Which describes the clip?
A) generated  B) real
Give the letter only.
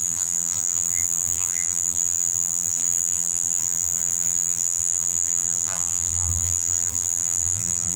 A